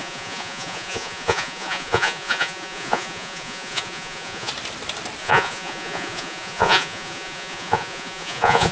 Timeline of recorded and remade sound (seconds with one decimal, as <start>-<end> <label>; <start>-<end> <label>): 0.0-4.5 remade; 4.5-5.2 recorded; 5.2-8.7 remade